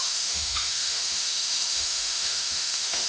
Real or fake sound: fake